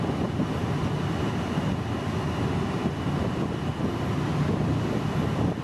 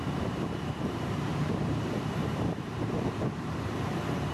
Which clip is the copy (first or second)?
second